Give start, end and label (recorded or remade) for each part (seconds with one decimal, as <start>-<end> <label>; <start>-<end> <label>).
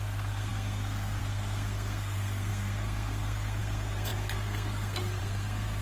0.0-5.8 remade